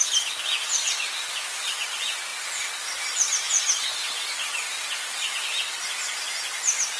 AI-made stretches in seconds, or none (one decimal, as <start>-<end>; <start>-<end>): none